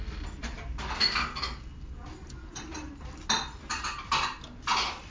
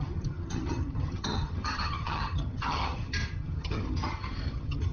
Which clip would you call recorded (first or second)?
first